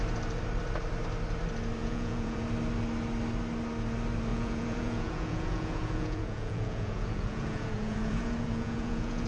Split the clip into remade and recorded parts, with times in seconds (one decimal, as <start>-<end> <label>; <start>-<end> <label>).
0.0-1.8 recorded; 1.8-2.4 remade; 2.4-4.3 recorded; 4.3-9.3 remade